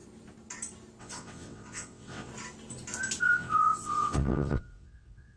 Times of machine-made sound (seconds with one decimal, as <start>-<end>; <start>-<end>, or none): 1.0-2.3; 3.2-5.4